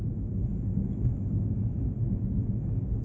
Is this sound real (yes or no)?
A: no